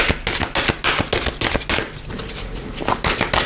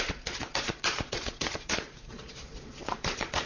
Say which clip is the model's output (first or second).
second